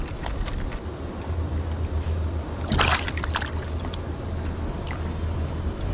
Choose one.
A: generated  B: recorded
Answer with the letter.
B